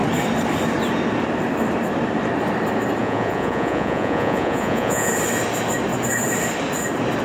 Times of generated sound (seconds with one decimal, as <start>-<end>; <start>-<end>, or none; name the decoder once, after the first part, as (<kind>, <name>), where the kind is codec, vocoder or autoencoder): 3.0-5.1 (vocoder, Vocos)